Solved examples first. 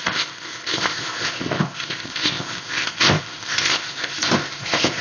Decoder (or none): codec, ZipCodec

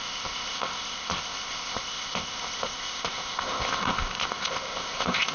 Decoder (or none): codec, ZipCodec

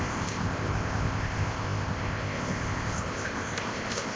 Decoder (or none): codec, ZipCodec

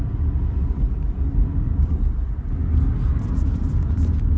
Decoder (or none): none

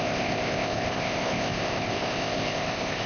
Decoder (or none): codec, ZipCodec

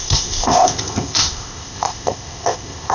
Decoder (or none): codec, ZipCodec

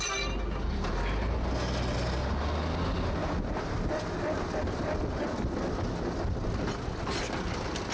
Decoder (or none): none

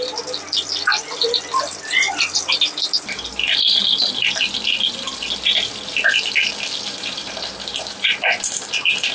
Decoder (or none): none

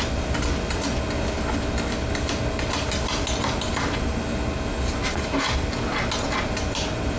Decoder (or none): none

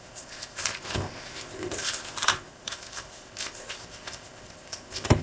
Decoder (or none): codec, ZipCodec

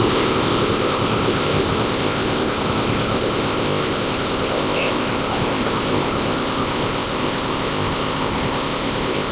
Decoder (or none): codec, ZipCodec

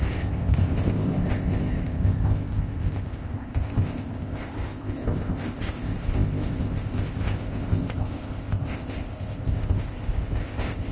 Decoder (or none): codec, ZipCodec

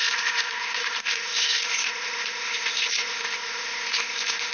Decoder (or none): codec, ZipCodec